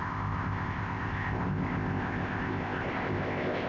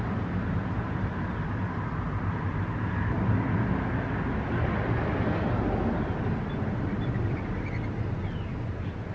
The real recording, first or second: second